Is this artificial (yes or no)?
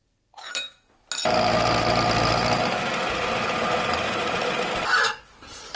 no